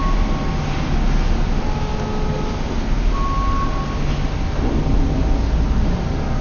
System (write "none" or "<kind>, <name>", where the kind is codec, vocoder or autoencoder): none